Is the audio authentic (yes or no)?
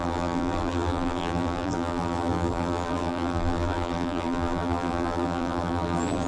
no